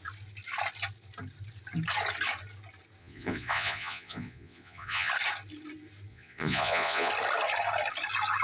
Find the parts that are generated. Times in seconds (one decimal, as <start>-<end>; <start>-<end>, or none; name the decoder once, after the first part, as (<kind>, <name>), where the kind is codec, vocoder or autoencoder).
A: 3.0-5.1 (vocoder, Vocos); 6.1-7.1